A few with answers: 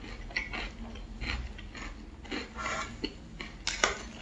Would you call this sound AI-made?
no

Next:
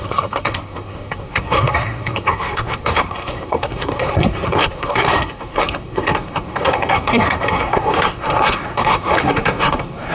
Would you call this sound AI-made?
yes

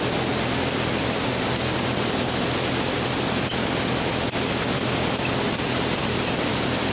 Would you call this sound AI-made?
no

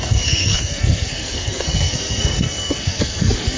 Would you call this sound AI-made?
yes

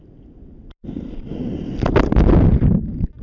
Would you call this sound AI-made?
no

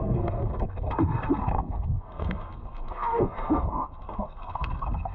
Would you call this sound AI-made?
yes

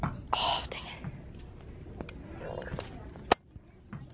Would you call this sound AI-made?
no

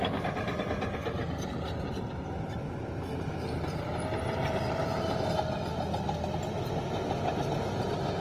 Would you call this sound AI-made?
no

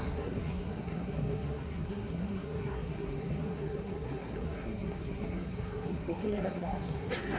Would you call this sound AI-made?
yes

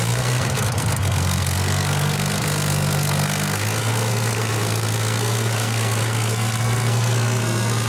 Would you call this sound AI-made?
yes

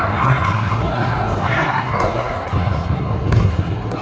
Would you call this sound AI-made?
yes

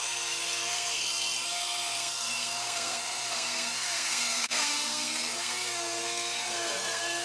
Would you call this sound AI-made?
yes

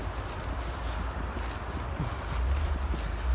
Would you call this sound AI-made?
no